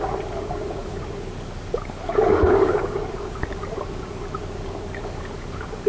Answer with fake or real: fake